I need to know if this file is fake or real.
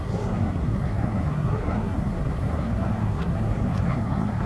fake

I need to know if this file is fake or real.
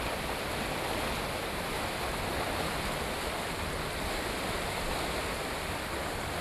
real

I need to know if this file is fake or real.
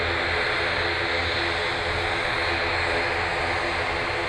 real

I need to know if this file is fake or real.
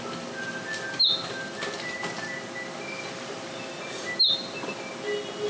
real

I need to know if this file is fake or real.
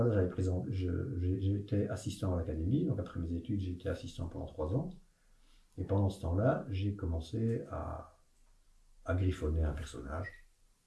real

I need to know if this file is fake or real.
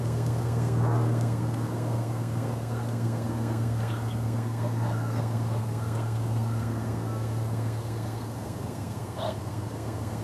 fake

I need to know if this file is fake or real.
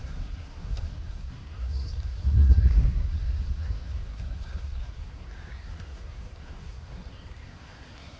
fake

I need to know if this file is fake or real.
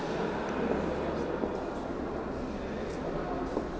real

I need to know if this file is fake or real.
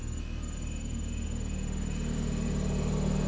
real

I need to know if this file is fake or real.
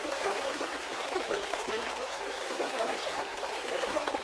fake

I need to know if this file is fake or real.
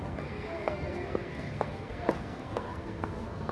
fake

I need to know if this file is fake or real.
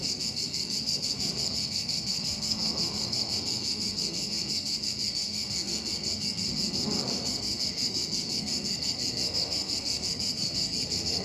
fake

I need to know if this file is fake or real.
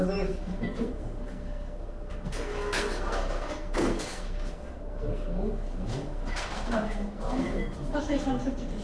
fake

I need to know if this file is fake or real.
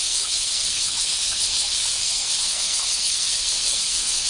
fake